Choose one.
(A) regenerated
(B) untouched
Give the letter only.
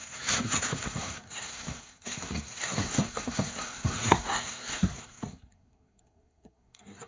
A